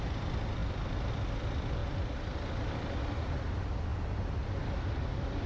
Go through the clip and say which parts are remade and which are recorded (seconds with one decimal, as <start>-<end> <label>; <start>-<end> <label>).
0.0-5.5 recorded